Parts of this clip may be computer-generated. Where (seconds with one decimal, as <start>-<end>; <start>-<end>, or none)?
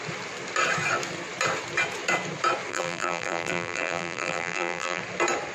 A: 2.7-5.0